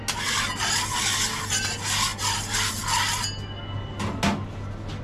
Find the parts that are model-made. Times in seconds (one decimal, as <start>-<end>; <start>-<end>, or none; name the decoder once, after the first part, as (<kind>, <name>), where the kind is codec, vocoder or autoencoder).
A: none